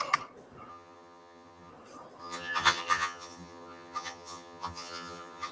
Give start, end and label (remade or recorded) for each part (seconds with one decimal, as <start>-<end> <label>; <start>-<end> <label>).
0.0-0.7 recorded; 0.7-1.7 remade; 1.7-2.2 recorded; 2.2-5.5 remade